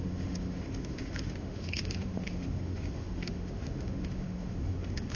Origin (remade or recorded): remade